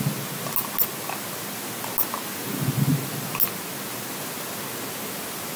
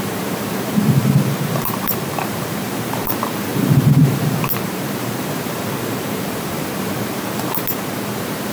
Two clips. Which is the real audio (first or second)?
first